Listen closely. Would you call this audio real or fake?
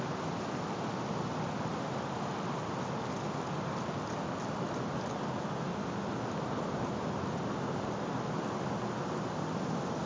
real